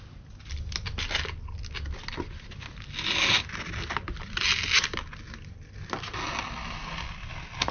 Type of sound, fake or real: real